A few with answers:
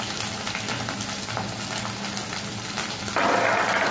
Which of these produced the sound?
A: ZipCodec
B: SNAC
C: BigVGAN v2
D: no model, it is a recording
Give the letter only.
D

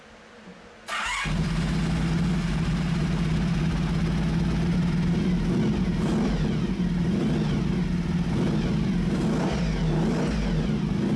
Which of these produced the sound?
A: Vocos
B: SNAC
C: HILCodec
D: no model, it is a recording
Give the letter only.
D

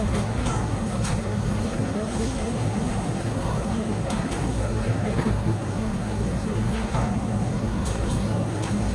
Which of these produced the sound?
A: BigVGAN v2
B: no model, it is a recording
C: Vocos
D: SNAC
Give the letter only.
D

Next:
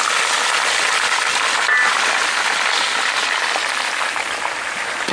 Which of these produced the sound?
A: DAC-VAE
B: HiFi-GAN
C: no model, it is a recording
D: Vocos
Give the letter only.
C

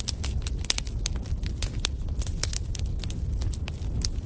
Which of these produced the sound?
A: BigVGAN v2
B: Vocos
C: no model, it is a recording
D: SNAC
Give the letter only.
C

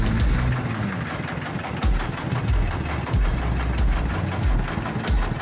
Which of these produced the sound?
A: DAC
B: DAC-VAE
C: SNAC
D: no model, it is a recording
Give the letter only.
D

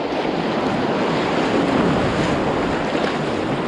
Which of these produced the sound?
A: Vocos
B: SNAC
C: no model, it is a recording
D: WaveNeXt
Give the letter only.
C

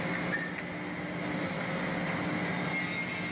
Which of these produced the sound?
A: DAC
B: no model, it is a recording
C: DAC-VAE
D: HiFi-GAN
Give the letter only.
B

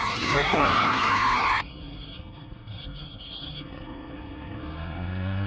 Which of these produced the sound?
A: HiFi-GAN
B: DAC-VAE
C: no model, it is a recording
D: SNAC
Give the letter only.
D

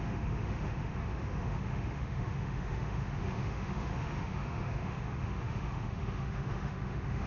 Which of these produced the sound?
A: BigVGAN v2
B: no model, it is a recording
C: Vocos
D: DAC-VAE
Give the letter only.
D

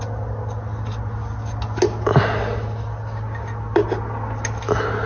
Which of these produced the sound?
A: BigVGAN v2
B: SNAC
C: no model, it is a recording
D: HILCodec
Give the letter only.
C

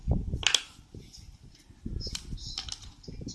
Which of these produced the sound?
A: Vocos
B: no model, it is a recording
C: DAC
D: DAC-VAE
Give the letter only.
B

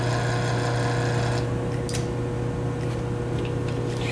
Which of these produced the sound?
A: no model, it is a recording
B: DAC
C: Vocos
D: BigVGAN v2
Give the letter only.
A